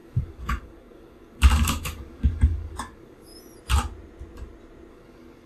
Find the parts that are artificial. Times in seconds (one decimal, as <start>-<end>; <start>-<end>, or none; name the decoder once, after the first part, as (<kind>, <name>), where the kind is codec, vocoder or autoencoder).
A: 0.0-3.3 (codec, DAC); 4.9-5.5

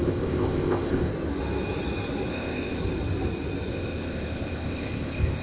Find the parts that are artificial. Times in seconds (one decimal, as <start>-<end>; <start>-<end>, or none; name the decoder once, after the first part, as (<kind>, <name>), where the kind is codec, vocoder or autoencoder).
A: 0.0-1.1 (codec, ZipCodec); 2.3-2.8; 3.7-5.4

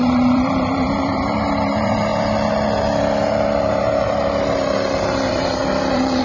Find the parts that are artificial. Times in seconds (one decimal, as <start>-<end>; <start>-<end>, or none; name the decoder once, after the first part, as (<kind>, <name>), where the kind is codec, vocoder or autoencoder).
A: 0.0-2.1 (vocoder, BigVGAN v2); 3.7-6.2

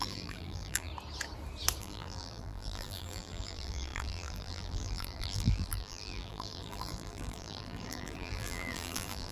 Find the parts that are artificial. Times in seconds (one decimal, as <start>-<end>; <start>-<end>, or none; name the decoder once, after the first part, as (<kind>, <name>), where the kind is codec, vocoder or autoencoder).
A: 0.0-0.9 (vocoder, BigVGAN v2); 1.8-9.3